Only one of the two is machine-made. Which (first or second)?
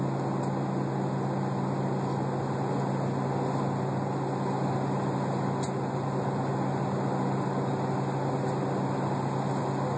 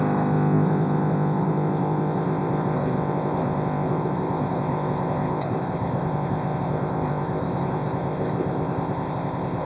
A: second